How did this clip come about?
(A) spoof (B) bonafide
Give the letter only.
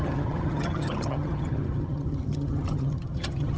A